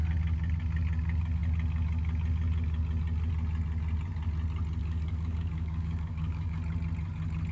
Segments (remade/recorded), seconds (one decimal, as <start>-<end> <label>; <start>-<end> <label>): 0.0-4.8 recorded; 4.8-6.6 remade; 6.6-7.5 recorded